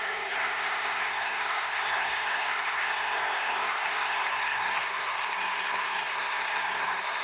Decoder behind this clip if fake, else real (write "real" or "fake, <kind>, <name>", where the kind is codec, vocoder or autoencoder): fake, codec, SNAC